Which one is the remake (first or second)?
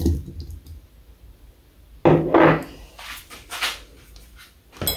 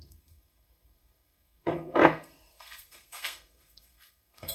second